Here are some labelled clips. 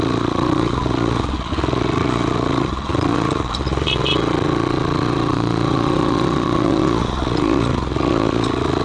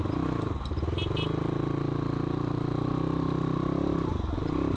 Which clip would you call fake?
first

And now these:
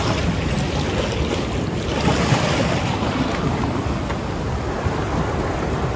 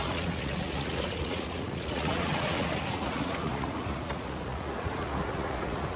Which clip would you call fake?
second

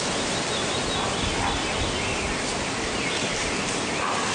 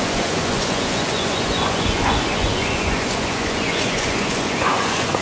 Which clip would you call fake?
second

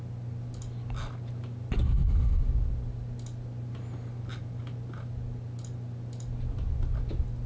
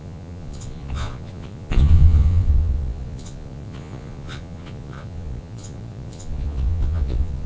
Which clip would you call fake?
second